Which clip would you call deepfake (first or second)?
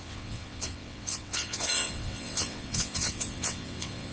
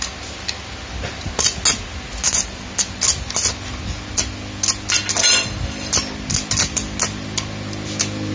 first